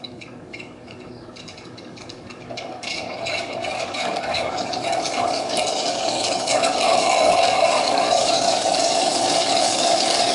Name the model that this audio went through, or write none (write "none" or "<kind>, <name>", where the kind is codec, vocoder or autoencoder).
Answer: codec, DAC